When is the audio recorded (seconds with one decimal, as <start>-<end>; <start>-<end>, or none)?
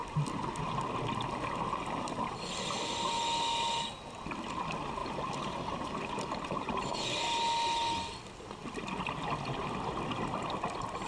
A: 0.0-5.0; 7.2-11.1